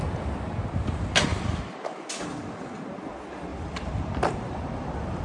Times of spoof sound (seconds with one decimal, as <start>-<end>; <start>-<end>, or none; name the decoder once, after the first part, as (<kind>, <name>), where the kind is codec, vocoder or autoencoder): 1.3-2.1 (vocoder, BigVGAN v2); 3.5-5.2